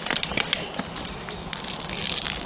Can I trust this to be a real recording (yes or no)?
yes